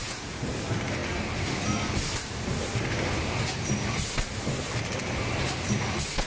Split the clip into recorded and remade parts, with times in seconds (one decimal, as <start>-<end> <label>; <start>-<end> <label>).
0.0-0.5 remade; 0.5-6.3 recorded